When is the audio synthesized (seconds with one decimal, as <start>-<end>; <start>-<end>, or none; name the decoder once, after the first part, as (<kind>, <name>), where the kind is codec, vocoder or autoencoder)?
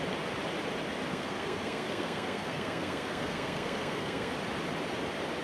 1.1-4.3 (codec, SNAC)